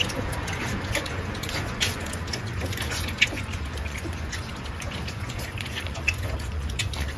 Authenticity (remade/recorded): remade